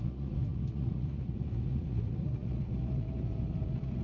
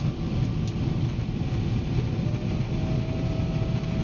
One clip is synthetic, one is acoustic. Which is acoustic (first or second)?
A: second